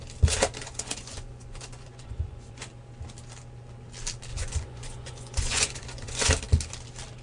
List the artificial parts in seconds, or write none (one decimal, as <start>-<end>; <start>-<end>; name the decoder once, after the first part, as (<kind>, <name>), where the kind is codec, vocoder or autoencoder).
0.6-2.7 (vocoder, Vocos); 4.3-6.3